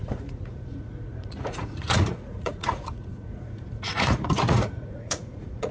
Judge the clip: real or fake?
fake